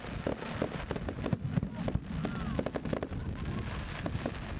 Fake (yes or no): no